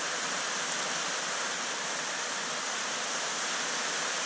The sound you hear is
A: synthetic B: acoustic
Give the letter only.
B